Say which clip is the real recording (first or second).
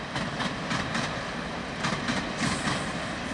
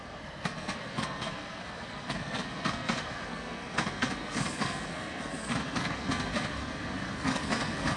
first